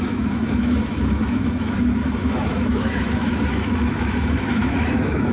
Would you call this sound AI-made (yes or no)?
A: yes